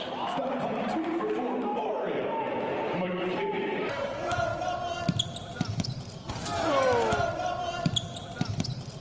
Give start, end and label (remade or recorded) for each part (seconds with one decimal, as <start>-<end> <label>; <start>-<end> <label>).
0.0-4.5 remade; 4.5-5.3 recorded; 5.3-6.5 remade; 6.5-7.6 recorded; 7.6-9.0 remade